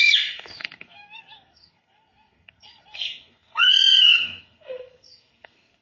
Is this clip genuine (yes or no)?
no